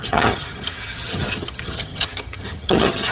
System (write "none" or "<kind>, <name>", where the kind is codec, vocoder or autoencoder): vocoder, HiFi-GAN